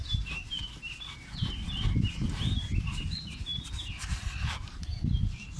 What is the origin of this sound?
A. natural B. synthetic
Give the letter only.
A